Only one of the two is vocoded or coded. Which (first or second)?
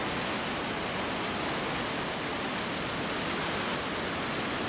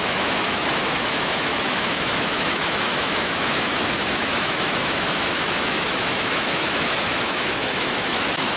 second